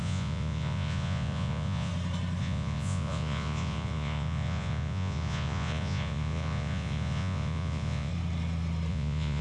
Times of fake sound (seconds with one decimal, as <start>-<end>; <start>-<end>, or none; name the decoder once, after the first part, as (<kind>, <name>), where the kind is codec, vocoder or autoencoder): 0.0-1.9 (vocoder, Vocos); 2.4-8.1; 8.9-9.4